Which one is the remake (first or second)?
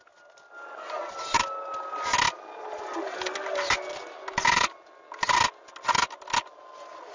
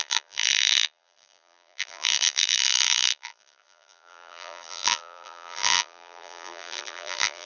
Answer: second